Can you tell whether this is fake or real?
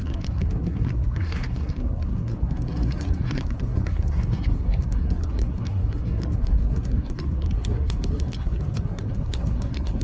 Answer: fake